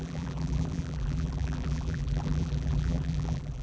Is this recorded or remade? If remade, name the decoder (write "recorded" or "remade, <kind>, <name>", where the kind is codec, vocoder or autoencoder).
remade, vocoder, BigVGAN v2